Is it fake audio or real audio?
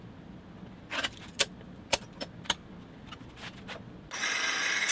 real